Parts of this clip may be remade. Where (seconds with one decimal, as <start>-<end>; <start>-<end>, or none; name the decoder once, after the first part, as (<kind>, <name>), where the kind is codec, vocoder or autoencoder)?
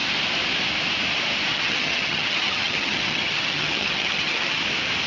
1.5-4.6 (vocoder, HiFi-GAN)